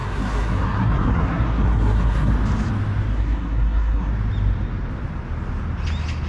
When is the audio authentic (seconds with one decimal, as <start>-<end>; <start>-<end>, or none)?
2.3-3.1; 4.1-6.3